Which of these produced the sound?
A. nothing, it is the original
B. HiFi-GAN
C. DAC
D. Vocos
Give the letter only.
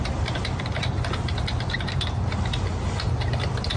A